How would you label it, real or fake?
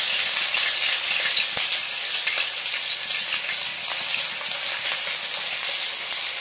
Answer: real